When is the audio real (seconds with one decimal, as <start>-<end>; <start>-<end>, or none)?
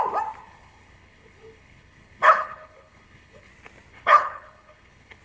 0.0-0.4; 3.5-3.9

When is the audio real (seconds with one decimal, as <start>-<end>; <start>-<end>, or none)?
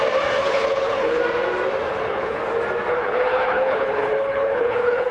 0.0-0.4; 1.2-1.9; 2.4-2.9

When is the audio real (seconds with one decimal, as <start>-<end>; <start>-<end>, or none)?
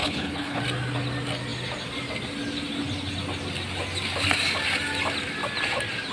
0.6-6.1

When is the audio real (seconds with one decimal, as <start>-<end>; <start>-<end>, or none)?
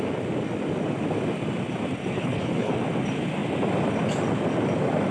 0.0-2.1; 2.7-5.1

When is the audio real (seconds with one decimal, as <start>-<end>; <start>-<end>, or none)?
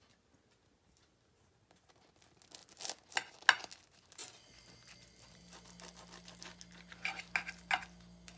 0.0-8.4